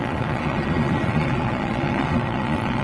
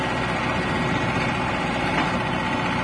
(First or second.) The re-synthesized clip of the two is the first